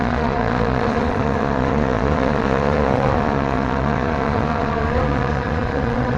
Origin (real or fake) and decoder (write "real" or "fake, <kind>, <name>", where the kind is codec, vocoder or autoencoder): fake, vocoder, Vocos